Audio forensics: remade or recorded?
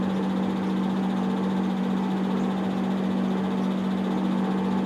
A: recorded